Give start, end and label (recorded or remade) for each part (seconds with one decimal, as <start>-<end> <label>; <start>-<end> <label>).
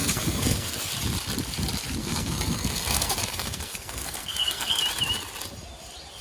0.0-0.9 remade; 0.9-2.0 recorded; 2.0-4.8 remade; 4.8-6.2 recorded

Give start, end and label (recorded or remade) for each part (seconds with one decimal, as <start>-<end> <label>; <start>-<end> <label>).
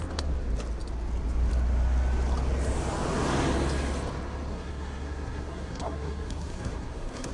0.0-4.5 recorded; 4.5-7.3 remade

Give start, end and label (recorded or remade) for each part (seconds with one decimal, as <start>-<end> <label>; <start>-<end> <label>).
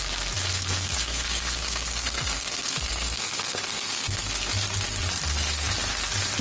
0.0-0.5 recorded; 0.5-4.3 remade; 4.3-6.4 recorded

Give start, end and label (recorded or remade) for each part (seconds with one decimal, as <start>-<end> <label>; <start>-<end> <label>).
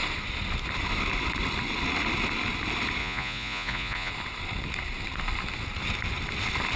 0.0-3.0 recorded; 3.0-4.1 remade; 4.1-6.8 recorded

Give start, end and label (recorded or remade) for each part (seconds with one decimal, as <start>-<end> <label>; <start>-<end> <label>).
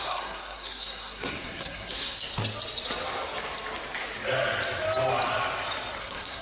0.0-2.3 remade; 2.3-6.0 recorded; 6.0-6.4 remade